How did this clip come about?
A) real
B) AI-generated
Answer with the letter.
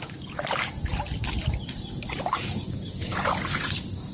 B